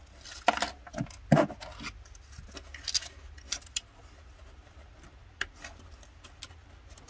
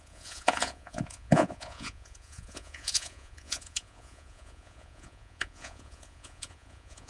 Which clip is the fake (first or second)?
second